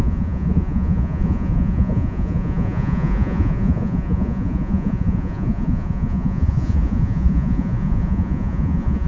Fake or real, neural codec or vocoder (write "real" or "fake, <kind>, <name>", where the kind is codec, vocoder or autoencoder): fake, vocoder, Vocos